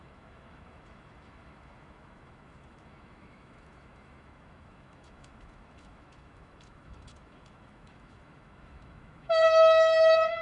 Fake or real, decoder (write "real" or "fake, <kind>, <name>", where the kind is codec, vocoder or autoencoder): fake, autoencoder, DAC-VAE